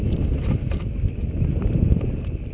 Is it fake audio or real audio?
real